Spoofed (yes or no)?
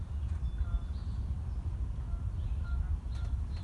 no